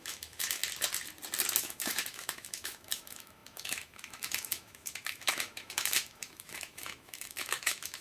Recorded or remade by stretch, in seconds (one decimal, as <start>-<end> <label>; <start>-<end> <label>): 0.0-0.6 remade; 0.6-1.6 recorded; 1.6-8.0 remade